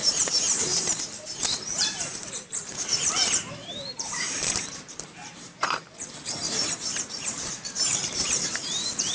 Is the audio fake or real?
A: fake